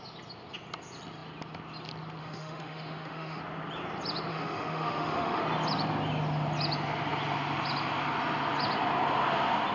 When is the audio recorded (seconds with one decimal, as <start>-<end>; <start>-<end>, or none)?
0.0-2.2; 3.4-4.3; 5.4-9.7